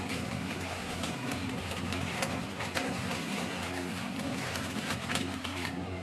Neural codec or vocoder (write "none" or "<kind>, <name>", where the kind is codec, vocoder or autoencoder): codec, SNAC